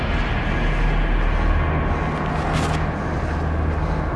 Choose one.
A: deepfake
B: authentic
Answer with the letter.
B